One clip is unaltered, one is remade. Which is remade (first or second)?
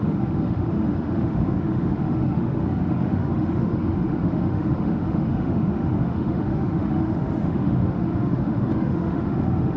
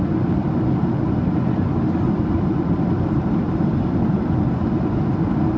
first